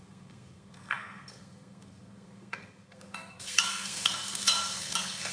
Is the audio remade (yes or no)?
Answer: yes